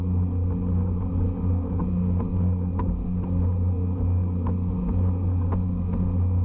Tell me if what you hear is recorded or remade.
recorded